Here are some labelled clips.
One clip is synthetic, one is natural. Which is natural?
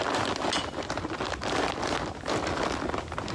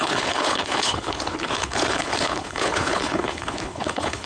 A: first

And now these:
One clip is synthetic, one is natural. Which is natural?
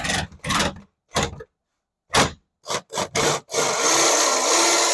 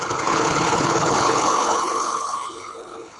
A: first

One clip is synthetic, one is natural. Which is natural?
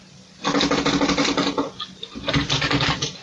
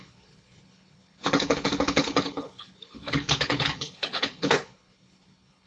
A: first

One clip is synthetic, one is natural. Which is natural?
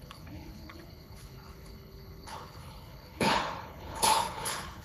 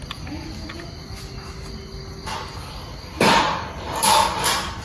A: second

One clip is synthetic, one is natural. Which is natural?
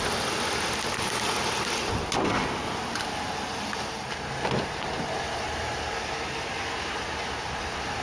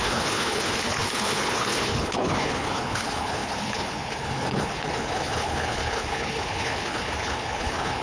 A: first